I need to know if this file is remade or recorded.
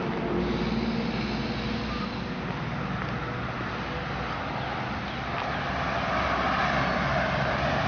recorded